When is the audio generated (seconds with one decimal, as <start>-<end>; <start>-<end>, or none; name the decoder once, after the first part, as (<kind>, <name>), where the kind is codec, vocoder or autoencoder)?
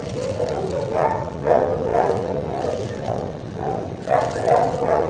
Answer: 0.0-5.1 (vocoder, WaveNeXt)